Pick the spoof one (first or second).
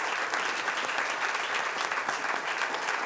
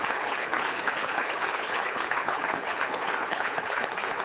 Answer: second